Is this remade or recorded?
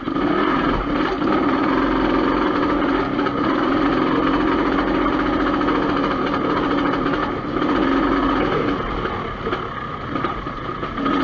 recorded